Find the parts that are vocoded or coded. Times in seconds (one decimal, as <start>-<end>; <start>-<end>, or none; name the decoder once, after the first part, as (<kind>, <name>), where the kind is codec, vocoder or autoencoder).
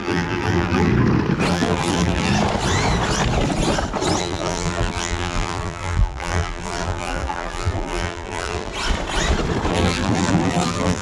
0.0-0.9 (vocoder, BigVGAN v2); 1.5-2.3; 4.2-8.7; 9.7-11.0